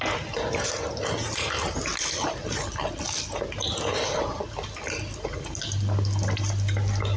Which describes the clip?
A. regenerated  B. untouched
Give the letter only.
B